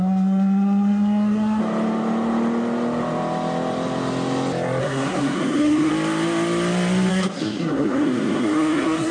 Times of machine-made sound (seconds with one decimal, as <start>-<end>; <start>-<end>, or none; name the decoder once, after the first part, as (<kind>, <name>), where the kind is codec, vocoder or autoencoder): 0.0-1.6 (codec, SNAC); 4.8-5.9; 7.1-9.1